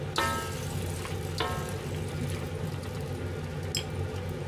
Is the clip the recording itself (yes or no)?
yes